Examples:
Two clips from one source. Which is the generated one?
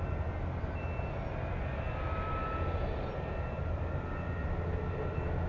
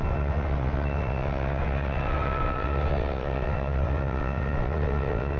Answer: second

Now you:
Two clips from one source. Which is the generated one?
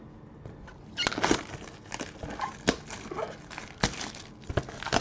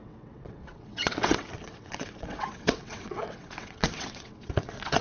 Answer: second